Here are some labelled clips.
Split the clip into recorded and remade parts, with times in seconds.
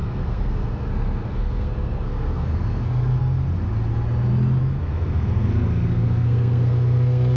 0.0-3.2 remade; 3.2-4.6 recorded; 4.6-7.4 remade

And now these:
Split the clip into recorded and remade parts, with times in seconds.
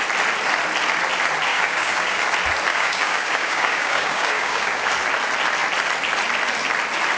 0.0-1.5 recorded; 1.5-2.2 remade; 2.2-2.7 recorded; 2.7-4.9 remade; 4.9-7.2 recorded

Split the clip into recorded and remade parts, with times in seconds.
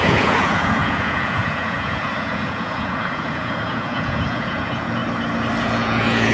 0.0-5.0 remade; 5.0-5.6 recorded; 5.6-6.3 remade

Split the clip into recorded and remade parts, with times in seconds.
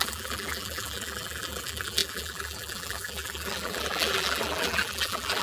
0.0-5.4 remade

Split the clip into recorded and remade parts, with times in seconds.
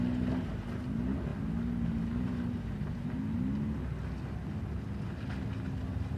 0.0-6.2 recorded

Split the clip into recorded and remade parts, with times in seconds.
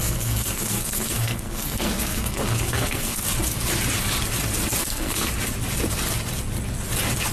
0.0-3.2 remade; 3.2-4.8 recorded; 4.8-5.3 remade; 5.3-7.3 recorded